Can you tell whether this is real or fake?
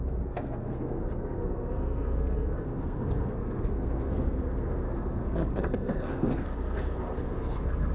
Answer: fake